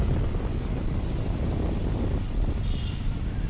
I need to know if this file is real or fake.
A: real